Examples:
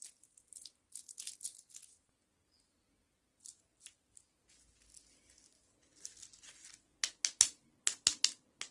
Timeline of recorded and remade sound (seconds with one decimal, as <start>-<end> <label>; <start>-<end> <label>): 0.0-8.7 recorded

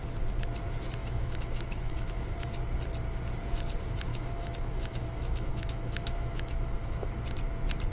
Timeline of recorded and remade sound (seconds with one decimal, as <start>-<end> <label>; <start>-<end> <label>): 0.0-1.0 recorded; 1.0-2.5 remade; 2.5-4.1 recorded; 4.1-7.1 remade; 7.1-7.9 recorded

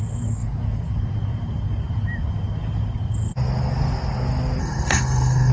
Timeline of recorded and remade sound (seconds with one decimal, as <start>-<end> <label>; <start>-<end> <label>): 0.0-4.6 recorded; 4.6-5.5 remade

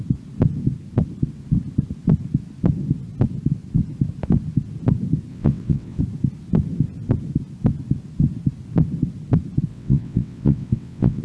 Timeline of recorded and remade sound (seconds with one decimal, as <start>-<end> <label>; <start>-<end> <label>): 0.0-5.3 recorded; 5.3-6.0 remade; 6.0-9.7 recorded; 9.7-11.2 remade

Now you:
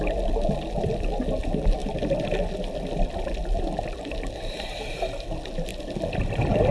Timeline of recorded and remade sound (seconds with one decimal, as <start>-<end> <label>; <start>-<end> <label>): 0.0-6.7 recorded